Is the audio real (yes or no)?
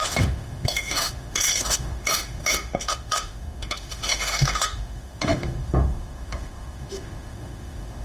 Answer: no